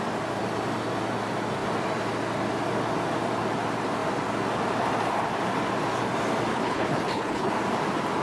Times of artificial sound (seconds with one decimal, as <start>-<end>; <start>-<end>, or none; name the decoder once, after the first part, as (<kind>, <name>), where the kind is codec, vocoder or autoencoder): 6.5-7.5 (codec, HILCodec)